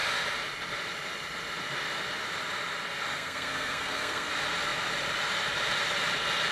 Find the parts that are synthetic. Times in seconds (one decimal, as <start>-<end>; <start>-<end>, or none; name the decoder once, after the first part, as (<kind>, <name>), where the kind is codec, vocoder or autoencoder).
3.1-4.3 (codec, SNAC)

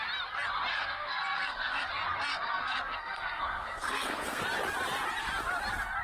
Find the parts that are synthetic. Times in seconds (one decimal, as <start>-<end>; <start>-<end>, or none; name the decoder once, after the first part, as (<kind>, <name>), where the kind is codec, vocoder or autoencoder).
0.7-1.9 (codec, SNAC); 2.3-4.4

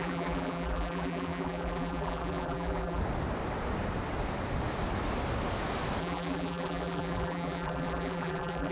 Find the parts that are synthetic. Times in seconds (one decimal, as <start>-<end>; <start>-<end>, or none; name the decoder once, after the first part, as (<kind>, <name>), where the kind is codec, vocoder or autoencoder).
0.0-3.0 (vocoder, BigVGAN v2); 6.0-8.7

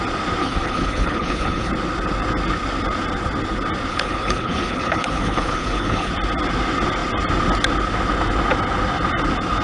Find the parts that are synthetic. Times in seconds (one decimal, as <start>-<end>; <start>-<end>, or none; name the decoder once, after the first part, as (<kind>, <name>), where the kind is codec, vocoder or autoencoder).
0.4-1.7 (codec, HILCodec); 3.9-6.1

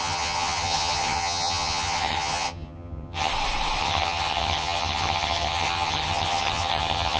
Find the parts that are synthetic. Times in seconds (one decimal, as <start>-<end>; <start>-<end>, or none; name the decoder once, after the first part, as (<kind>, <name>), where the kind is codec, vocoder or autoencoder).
0.0-3.3 (vocoder, HiFi-GAN); 3.8-7.2